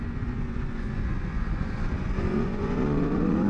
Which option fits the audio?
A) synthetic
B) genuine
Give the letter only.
A